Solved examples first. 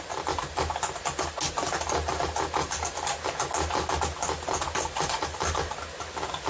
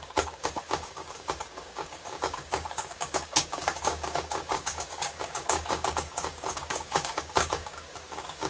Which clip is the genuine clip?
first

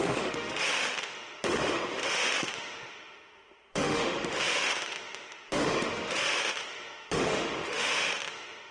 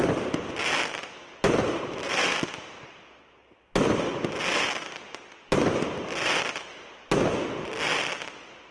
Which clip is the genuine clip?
second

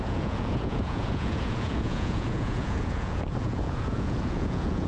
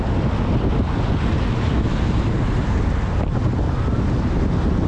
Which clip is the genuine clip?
second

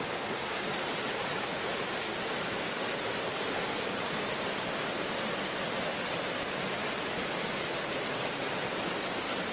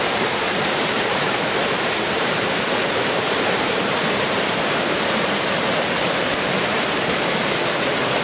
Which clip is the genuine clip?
first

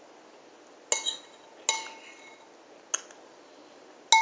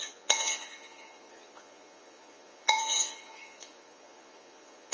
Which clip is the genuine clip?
first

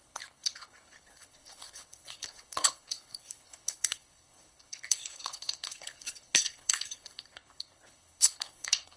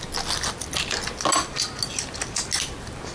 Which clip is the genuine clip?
second